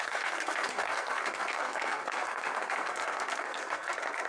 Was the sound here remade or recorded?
remade